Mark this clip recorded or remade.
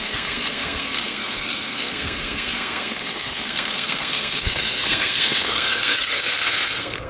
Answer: remade